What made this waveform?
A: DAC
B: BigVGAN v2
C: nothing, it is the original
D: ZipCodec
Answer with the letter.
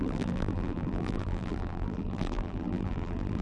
B